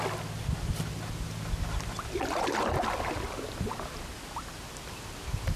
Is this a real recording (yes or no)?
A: yes